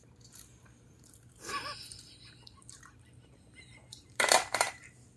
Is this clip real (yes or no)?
no